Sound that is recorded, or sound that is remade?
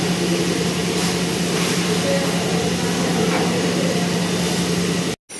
recorded